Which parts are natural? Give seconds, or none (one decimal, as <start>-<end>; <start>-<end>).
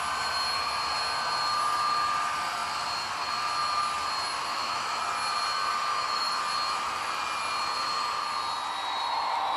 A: 0.0-4.5; 5.0-5.9; 6.4-9.6